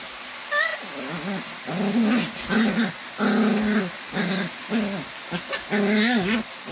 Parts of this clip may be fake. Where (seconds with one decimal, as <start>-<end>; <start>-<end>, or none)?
none